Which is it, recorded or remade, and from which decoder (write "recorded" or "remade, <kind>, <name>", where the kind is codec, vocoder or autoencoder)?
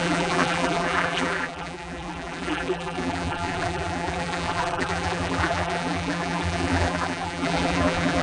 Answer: remade, vocoder, BigVGAN v2